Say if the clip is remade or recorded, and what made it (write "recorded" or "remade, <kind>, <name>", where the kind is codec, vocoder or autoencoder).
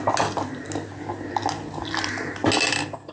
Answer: recorded